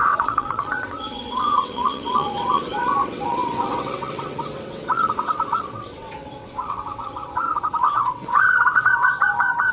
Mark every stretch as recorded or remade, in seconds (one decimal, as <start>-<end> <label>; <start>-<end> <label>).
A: 0.0-9.7 remade